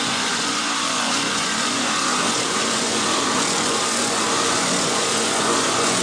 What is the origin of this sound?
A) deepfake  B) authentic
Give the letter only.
A